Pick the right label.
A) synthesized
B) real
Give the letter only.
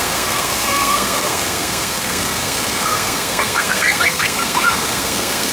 A